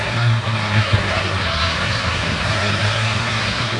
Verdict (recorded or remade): remade